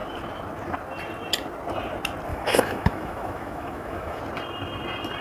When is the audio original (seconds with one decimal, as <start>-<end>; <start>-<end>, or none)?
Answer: 0.0-2.3; 4.2-5.2